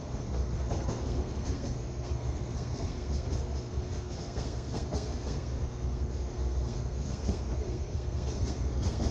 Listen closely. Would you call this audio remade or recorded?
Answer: remade